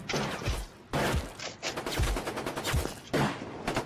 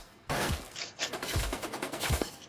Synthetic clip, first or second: second